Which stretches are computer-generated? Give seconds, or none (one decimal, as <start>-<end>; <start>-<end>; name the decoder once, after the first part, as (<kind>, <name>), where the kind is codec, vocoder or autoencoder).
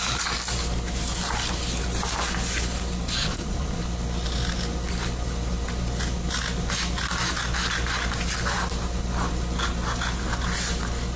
3.2-3.8 (vocoder, Vocos)